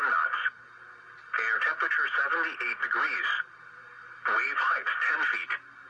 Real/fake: real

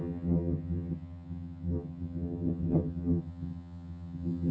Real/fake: fake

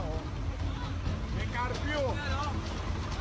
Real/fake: real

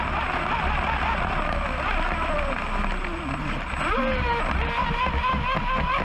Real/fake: real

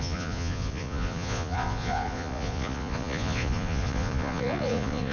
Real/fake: fake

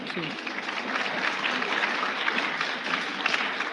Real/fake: real